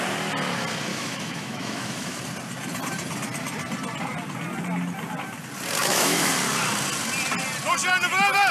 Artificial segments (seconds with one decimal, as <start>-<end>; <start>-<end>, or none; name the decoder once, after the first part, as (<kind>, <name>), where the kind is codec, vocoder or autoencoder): 0.9-2.2 (autoencoder, DAC-VAE); 5.8-6.3